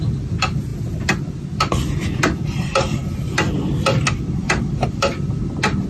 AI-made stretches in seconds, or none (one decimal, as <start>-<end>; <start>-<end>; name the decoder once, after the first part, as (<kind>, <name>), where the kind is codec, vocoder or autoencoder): 4.4-5.3 (vocoder, BigVGAN v2)